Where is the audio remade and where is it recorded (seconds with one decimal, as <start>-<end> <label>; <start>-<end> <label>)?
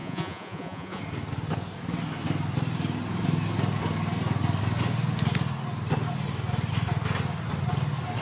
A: 0.0-1.0 remade; 1.0-8.2 recorded